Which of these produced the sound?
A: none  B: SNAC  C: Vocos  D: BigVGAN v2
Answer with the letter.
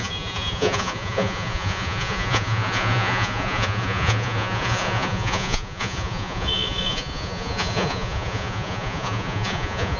C